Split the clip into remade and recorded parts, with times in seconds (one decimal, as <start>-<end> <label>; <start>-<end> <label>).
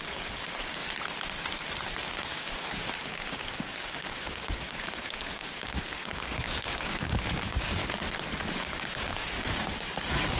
0.0-0.8 remade; 0.8-2.0 recorded; 2.0-7.8 remade; 7.8-8.6 recorded; 8.6-10.4 remade